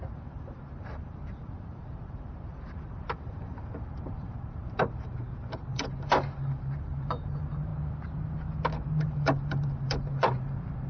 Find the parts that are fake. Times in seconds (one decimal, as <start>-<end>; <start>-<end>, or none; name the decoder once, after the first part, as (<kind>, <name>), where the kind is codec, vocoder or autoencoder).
0.0-7.7 (vocoder, BigVGAN v2); 9.0-10.9